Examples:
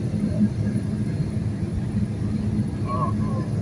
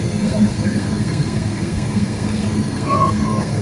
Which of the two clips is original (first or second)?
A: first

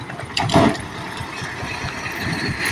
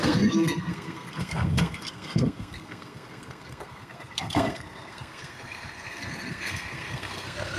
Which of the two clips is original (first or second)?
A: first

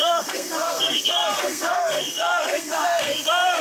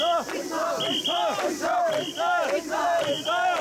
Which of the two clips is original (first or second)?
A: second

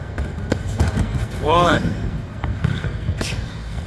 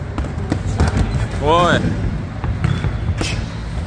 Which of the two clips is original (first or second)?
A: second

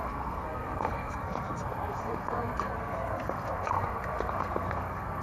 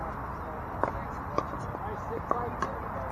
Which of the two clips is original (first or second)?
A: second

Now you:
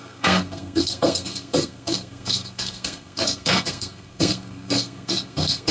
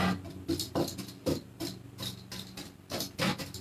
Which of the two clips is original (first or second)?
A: second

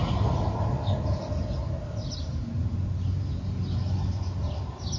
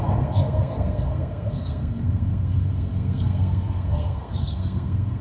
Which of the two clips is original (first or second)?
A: first